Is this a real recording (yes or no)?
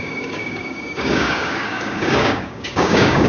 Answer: no